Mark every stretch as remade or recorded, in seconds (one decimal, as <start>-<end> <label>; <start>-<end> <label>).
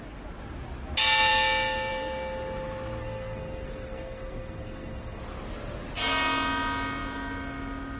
0.0-3.0 recorded; 3.0-5.2 remade; 5.2-8.0 recorded